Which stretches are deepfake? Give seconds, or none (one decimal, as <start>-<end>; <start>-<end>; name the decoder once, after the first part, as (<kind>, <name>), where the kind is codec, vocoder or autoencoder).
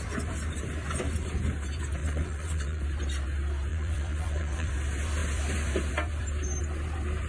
2.0-2.8 (vocoder, WaveNeXt); 3.7-4.7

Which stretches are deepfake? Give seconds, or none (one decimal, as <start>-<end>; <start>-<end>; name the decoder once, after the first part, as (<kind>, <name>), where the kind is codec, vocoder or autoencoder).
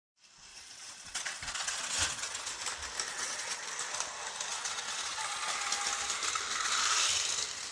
0.5-2.5 (vocoder, WaveNeXt); 3.1-3.6; 4.5-5.2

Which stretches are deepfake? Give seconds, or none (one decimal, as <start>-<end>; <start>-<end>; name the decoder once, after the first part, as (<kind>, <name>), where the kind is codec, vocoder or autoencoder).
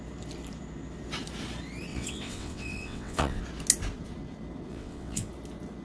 1.9-3.4 (vocoder, WaveNeXt); 4.7-5.3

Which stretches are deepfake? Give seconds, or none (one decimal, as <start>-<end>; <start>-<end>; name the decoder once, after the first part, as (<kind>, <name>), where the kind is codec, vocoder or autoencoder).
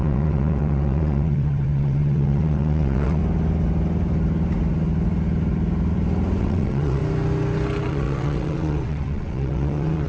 0.0-3.2 (vocoder, WaveNeXt); 6.4-7.0; 7.9-10.1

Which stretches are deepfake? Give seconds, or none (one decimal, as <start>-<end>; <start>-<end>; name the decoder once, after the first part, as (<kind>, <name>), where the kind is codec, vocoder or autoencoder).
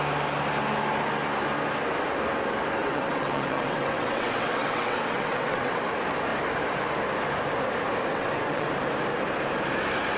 2.8-5.8 (vocoder, WaveNeXt); 8.1-8.7